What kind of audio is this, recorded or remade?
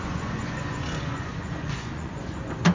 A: remade